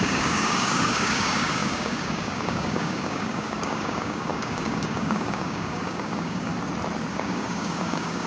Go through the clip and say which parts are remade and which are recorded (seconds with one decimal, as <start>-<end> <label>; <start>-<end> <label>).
0.0-6.5 remade; 6.5-7.1 recorded; 7.1-8.3 remade